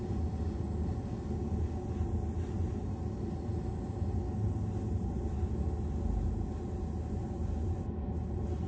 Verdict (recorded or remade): recorded